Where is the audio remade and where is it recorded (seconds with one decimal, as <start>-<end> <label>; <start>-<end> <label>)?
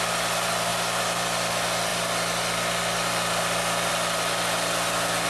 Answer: 0.0-5.3 recorded